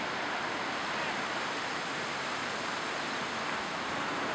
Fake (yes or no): no